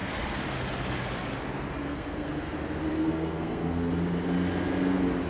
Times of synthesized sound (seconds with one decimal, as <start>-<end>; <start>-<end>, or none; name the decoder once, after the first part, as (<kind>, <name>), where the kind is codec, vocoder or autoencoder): 0.0-0.6 (codec, SNAC); 1.8-2.3; 2.9-3.9